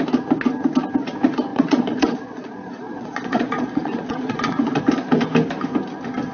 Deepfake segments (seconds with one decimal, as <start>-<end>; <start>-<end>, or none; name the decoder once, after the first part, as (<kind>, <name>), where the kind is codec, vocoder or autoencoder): 1.5-4.8 (vocoder, Vocos)